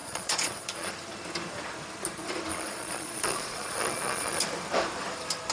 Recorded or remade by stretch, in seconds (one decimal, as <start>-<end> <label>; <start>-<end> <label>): 0.0-0.9 remade; 0.9-2.5 recorded; 2.5-4.4 remade; 4.4-5.5 recorded